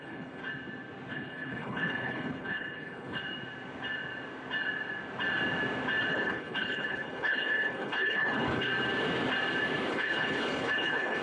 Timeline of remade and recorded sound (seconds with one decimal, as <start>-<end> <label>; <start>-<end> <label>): 0.0-0.4 remade; 0.4-1.1 recorded; 1.1-3.2 remade; 3.2-6.1 recorded; 6.1-8.7 remade; 8.7-9.9 recorded; 9.9-11.2 remade